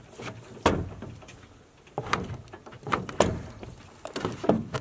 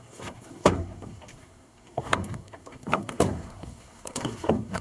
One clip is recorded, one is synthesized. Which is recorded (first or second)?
first